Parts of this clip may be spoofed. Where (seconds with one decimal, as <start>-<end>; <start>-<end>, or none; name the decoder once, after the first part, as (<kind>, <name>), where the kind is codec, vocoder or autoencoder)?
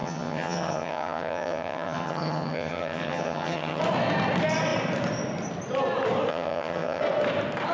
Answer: 0.0-3.8 (vocoder, HiFi-GAN); 6.3-7.0